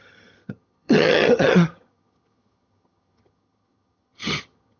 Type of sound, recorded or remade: remade